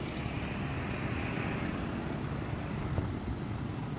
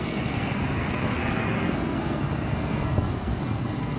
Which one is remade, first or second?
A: second